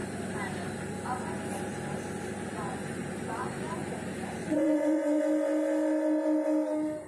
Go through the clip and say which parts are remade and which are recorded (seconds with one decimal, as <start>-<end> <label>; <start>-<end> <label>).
0.0-2.5 recorded; 2.5-3.0 remade; 3.0-3.4 recorded; 3.4-3.9 remade; 3.9-4.4 recorded; 4.4-5.2 remade; 5.2-7.1 recorded